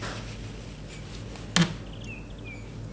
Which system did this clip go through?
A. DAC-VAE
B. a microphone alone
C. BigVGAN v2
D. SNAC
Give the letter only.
B